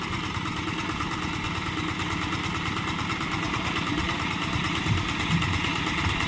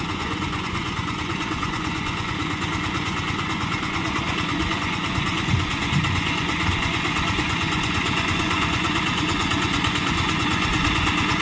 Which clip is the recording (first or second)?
first